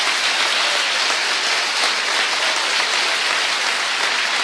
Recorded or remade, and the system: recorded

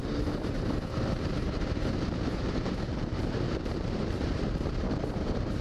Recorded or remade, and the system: remade, vocoder, BigVGAN v2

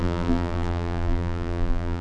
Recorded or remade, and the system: remade, vocoder, BigVGAN v2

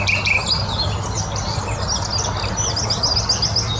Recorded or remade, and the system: recorded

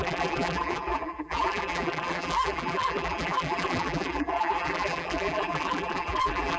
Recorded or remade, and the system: remade, vocoder, BigVGAN v2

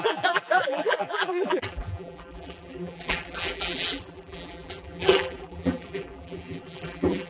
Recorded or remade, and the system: remade, vocoder, BigVGAN v2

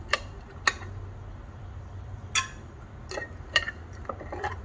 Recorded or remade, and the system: recorded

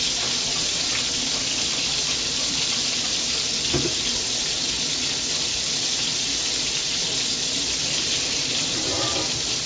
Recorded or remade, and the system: remade, vocoder, BigVGAN v2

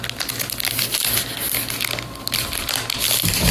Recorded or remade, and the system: recorded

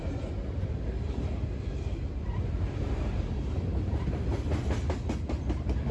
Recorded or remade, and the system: recorded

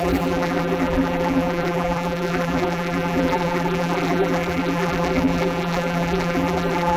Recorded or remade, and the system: remade, vocoder, BigVGAN v2